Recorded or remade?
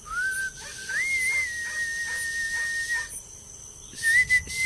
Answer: recorded